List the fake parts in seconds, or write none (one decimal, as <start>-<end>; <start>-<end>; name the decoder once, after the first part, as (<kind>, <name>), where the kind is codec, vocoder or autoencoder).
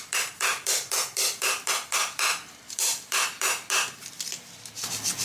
none